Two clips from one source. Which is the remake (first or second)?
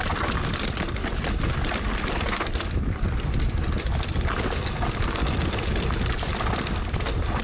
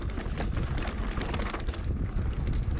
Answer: first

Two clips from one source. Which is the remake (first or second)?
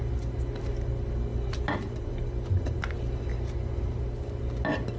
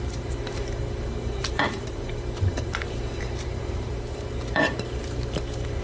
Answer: second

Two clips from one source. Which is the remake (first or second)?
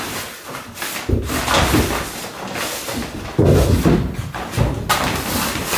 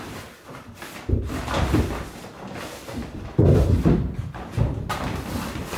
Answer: second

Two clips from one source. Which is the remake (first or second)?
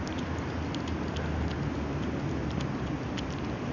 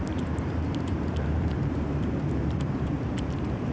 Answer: second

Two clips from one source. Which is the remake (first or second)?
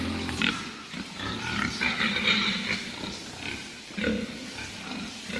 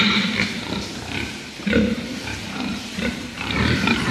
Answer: second